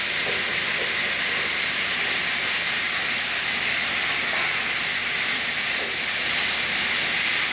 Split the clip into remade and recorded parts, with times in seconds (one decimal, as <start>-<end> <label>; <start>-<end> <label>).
0.0-7.5 recorded